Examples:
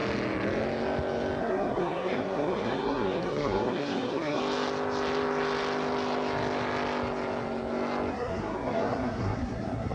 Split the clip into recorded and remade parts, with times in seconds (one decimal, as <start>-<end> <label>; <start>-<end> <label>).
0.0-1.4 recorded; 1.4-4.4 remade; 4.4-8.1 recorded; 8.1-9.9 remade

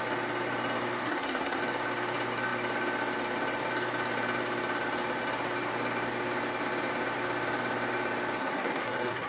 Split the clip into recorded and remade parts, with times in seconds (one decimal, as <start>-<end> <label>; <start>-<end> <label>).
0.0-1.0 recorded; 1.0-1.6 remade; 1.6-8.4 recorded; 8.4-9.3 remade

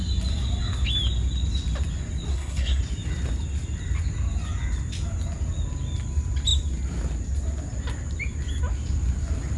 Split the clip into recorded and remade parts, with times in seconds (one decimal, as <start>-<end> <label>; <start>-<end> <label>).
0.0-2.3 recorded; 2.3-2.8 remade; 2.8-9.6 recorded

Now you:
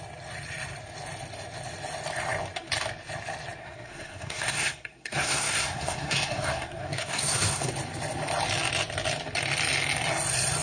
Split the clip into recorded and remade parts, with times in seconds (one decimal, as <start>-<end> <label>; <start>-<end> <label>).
0.0-3.6 recorded; 3.6-7.7 remade; 7.7-10.6 recorded

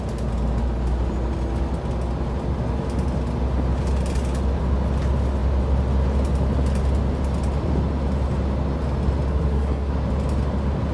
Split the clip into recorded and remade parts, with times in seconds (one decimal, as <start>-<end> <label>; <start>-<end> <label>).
0.0-9.3 recorded; 9.3-9.9 remade; 9.9-10.9 recorded

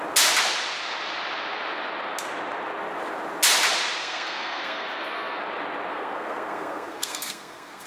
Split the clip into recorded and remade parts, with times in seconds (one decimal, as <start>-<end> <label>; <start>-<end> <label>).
0.0-4.0 recorded; 4.0-5.4 remade; 5.4-5.9 recorded; 5.9-7.9 remade